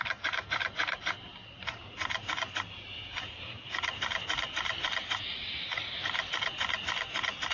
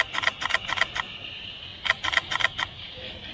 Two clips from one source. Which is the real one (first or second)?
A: second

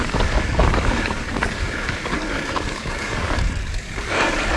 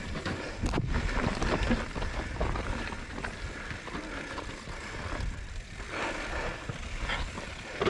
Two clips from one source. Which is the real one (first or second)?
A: second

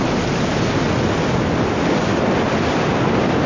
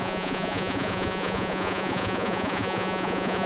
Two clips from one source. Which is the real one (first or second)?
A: first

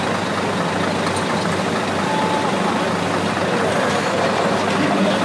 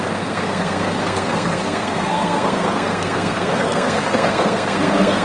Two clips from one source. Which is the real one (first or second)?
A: first